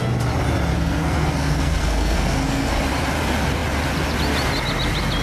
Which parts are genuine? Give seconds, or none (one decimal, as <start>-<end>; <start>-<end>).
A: 0.0-0.7; 2.8-5.2